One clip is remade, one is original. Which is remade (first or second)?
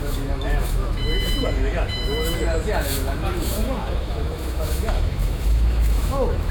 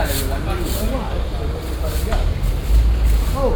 first